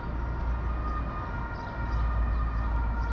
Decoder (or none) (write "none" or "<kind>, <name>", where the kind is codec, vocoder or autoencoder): none